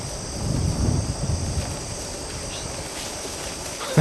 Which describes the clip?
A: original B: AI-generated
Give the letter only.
A